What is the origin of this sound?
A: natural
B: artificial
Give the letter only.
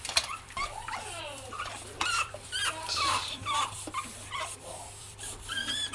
B